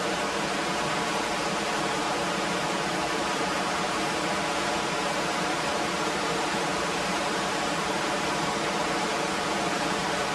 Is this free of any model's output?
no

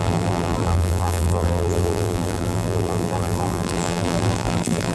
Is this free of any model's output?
no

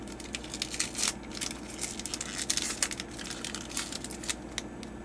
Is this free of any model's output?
yes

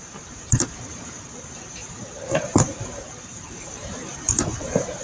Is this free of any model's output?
no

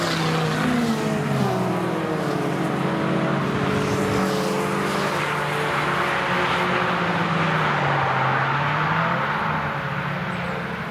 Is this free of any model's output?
yes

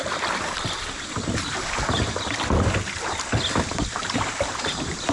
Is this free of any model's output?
yes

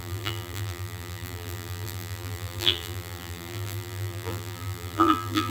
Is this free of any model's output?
no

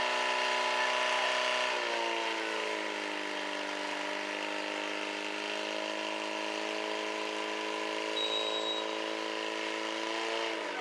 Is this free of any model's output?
yes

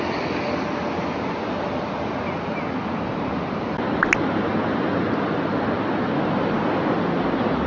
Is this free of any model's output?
yes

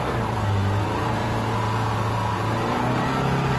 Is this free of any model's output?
no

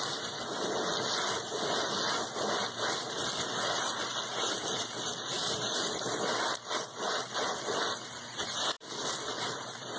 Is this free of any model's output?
no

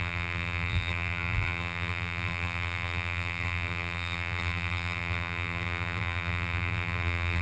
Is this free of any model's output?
no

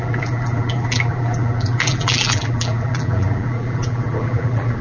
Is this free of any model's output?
no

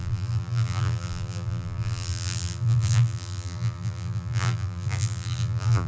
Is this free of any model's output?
no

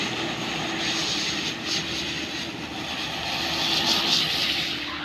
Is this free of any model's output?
yes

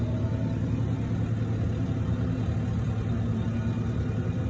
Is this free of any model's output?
yes